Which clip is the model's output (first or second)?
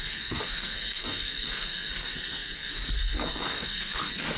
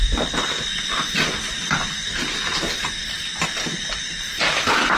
first